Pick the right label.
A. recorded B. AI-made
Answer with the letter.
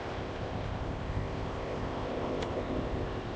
B